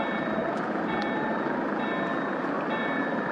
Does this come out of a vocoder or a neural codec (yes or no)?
yes